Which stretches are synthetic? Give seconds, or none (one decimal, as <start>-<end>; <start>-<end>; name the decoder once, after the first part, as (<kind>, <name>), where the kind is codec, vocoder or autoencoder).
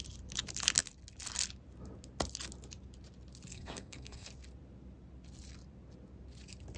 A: 3.5-4.3 (codec, SNAC)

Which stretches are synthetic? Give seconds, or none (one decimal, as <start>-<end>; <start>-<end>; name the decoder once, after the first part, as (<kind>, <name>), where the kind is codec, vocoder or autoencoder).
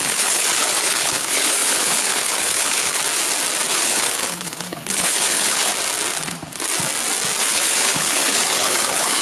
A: 0.0-3.0 (codec, HILCodec); 3.7-5.7; 7.4-9.2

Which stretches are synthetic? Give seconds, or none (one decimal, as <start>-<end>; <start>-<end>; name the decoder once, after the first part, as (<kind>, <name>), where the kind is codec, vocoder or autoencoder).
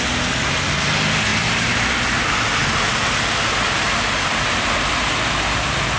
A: none